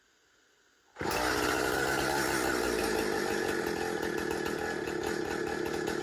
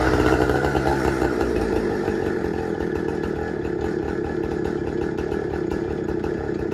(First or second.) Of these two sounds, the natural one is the first